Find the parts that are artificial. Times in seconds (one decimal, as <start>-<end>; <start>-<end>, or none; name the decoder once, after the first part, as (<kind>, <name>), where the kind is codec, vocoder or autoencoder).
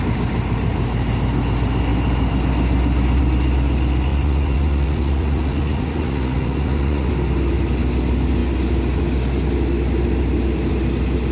4.1-7.1 (vocoder, Vocos)